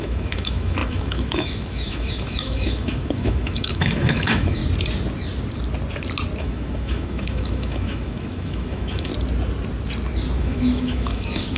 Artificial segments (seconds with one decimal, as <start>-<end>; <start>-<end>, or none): 0.0-4.6; 6.4-9.1; 10.4-11.6

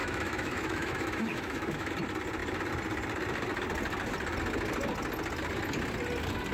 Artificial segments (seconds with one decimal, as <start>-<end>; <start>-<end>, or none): 0.0-1.9

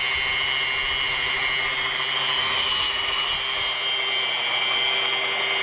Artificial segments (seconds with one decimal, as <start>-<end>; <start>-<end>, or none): 2.4-3.3

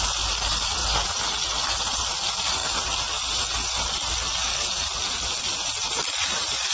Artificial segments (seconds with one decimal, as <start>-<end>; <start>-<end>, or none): none

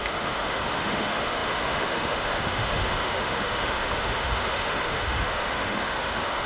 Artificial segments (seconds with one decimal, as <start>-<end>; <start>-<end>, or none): 0.0-6.5

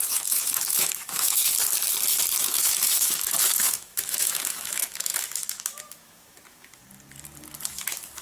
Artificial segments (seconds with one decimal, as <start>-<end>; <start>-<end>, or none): 0.0-1.5; 2.4-6.8; 7.7-8.2

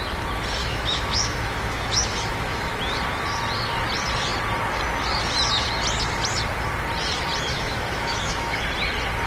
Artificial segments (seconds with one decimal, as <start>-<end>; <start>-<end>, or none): 0.6-2.7; 7.5-8.6